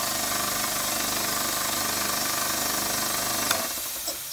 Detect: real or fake real